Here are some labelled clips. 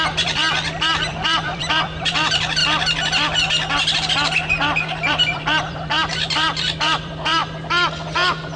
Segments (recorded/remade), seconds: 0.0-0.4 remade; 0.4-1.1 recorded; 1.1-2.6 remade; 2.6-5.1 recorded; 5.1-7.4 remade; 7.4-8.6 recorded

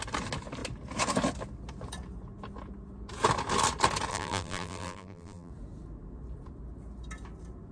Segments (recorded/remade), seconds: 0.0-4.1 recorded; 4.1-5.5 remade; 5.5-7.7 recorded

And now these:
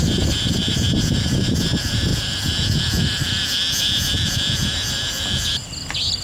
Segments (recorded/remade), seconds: 0.0-2.1 remade; 2.1-2.8 recorded; 2.8-6.2 remade